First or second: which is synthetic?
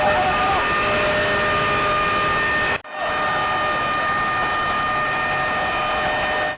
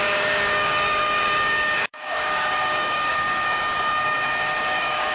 second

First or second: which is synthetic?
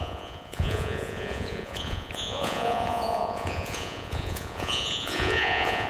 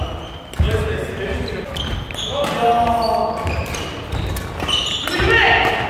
first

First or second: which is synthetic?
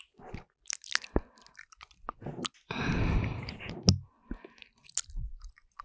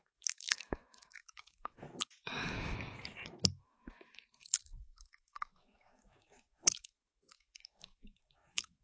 second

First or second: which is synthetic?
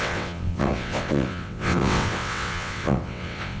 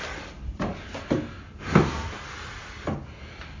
first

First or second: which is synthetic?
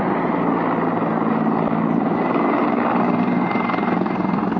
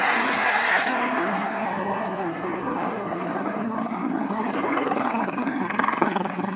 second